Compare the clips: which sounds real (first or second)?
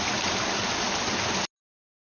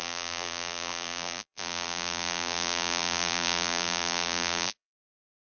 first